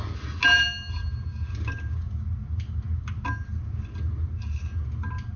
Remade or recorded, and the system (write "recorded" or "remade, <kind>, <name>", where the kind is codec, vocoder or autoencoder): recorded